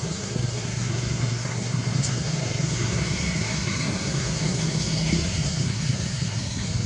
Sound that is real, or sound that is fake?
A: fake